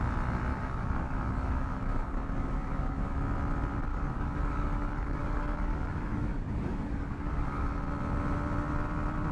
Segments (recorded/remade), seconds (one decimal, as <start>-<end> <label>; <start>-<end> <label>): 0.0-0.5 recorded; 0.5-3.2 remade; 3.2-3.9 recorded; 3.9-7.8 remade; 7.8-9.3 recorded